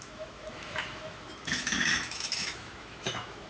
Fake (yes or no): yes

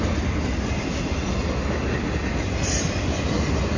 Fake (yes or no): no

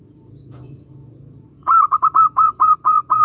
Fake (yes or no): yes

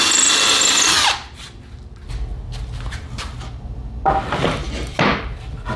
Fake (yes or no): no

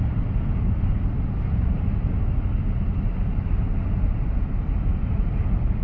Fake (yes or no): no